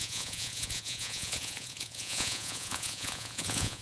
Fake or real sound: fake